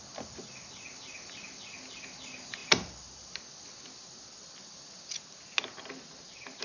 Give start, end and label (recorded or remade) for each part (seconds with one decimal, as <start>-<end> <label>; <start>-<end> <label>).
0.0-6.6 recorded

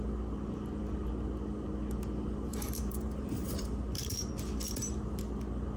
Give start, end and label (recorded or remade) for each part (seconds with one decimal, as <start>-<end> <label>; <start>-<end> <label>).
0.0-2.5 recorded; 2.5-4.3 remade; 4.3-5.8 recorded